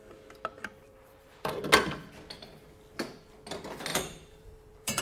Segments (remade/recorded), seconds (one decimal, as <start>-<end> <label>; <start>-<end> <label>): 0.0-0.8 recorded; 0.8-1.6 remade; 1.6-3.9 recorded; 3.9-5.0 remade